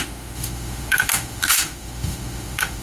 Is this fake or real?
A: fake